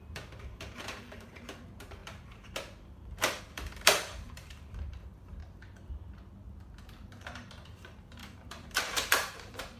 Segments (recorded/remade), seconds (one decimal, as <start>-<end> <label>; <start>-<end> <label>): 0.0-5.4 remade; 5.4-6.8 recorded; 6.8-9.8 remade